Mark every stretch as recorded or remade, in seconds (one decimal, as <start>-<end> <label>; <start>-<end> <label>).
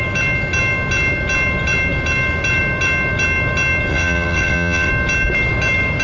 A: 0.0-3.9 recorded; 3.9-4.9 remade; 4.9-6.0 recorded